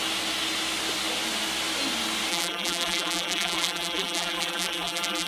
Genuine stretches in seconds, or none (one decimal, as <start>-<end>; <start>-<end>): 0.0-2.3